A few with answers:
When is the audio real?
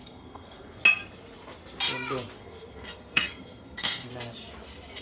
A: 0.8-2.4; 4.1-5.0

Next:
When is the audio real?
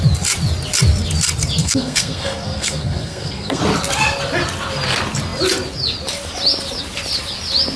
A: 0.0-1.6; 3.6-7.8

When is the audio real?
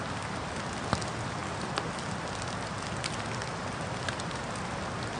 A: 0.0-5.2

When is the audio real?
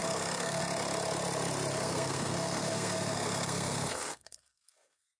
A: 0.6-1.8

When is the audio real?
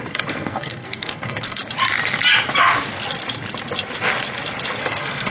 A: 1.6-4.8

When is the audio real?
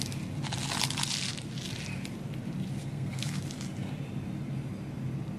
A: 0.0-2.8; 3.4-5.4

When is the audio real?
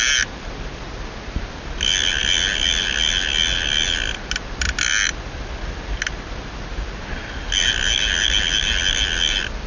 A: 0.0-9.7